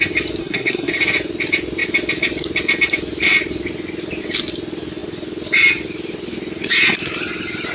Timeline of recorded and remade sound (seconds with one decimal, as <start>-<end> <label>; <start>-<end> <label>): 0.0-0.4 recorded; 0.4-0.9 remade; 0.9-7.7 recorded